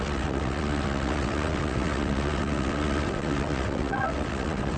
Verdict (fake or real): fake